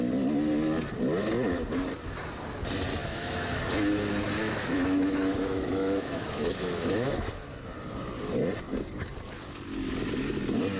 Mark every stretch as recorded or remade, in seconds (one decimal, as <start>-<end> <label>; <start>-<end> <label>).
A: 0.0-3.0 recorded; 3.0-3.6 remade; 3.6-4.4 recorded; 4.4-7.3 remade; 7.3-10.8 recorded